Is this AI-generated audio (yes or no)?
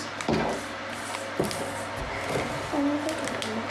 no